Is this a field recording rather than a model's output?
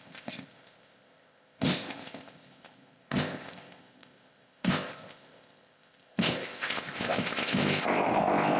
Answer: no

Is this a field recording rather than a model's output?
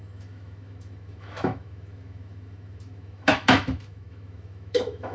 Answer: no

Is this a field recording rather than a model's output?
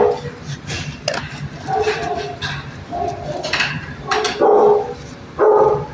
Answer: yes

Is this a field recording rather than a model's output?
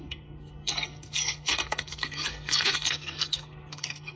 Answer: no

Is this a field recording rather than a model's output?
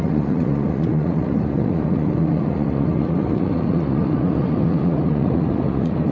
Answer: no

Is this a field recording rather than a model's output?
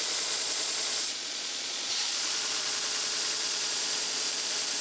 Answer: no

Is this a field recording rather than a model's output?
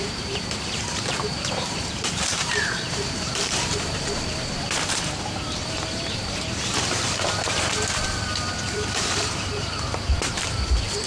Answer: no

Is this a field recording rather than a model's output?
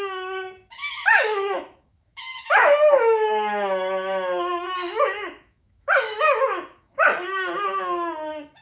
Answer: no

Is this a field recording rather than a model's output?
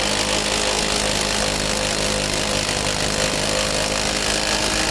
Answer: yes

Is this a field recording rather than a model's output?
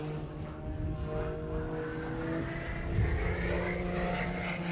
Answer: yes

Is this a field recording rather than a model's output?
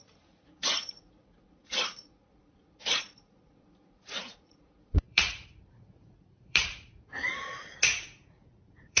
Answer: no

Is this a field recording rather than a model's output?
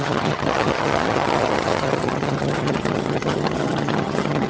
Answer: no